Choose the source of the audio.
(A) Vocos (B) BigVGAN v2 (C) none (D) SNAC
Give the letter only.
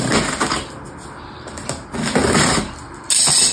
C